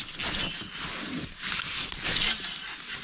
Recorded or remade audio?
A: recorded